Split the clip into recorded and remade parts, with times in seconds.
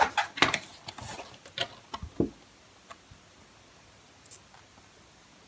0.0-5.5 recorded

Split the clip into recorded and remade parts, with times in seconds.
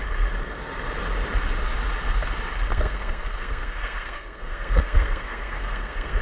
0.0-2.7 recorded; 2.7-6.2 remade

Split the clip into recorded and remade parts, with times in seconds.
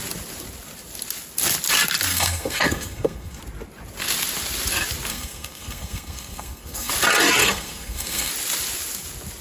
0.0-2.1 recorded; 2.1-3.4 remade; 3.4-5.1 recorded; 5.1-6.9 remade; 6.9-7.4 recorded; 7.4-8.3 remade; 8.3-9.4 recorded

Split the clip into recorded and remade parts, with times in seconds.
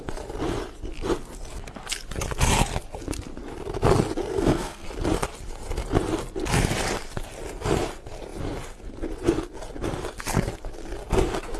0.0-4.3 recorded; 4.3-4.9 remade; 4.9-11.6 recorded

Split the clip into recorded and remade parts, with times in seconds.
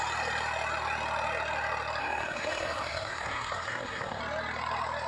0.0-2.0 recorded; 2.0-4.2 remade; 4.2-5.1 recorded